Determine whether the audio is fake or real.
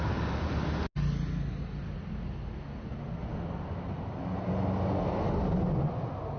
real